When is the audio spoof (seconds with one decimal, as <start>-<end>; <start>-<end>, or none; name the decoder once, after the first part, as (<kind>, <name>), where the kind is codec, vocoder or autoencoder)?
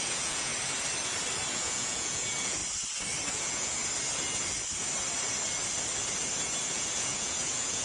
0.0-0.5 (vocoder, Vocos); 1.5-2.6; 3.3-3.8; 6.7-7.8